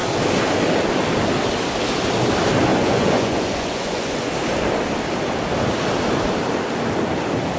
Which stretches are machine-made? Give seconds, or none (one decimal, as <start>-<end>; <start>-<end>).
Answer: 2.7-4.3